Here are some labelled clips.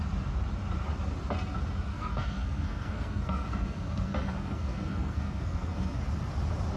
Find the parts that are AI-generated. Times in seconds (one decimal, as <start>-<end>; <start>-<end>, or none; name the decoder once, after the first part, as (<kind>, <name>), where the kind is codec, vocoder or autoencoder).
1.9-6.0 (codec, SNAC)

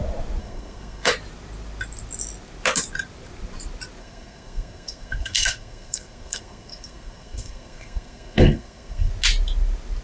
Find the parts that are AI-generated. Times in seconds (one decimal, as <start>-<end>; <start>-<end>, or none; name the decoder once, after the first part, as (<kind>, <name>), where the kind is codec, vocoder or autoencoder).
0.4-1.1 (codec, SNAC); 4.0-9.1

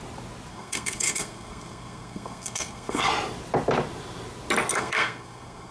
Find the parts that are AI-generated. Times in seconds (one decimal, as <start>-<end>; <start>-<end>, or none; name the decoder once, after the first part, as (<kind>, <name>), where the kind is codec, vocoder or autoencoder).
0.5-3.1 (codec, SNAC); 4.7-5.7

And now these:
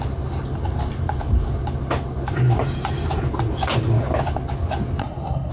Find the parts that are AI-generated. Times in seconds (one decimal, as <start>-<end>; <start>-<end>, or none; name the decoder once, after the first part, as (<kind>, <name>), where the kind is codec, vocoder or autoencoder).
5.0-5.5 (codec, SNAC)